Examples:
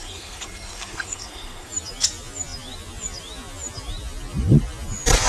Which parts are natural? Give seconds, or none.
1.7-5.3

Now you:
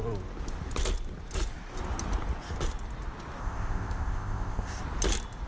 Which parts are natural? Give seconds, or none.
0.0-3.4; 4.8-5.5

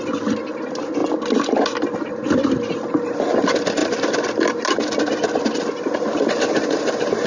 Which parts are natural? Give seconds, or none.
0.0-7.3